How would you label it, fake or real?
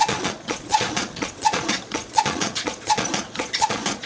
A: fake